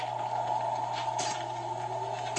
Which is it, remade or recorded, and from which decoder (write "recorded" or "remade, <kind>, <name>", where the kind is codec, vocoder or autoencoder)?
recorded